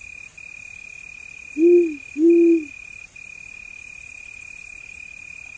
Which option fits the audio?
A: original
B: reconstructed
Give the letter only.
A